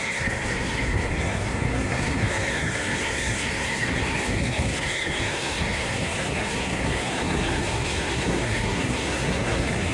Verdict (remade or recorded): remade